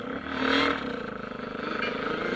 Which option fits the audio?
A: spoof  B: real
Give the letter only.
B